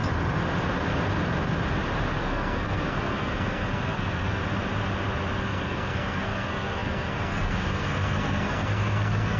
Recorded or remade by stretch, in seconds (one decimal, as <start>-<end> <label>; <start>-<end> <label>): 0.0-2.2 recorded; 2.2-4.4 remade; 4.4-5.4 recorded; 5.4-9.4 remade